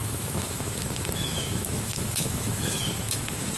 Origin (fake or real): fake